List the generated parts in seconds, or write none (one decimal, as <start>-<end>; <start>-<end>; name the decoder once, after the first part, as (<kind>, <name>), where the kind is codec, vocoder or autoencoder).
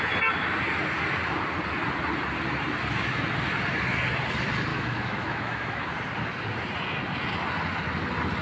4.7-5.9 (autoencoder, DAC-VAE)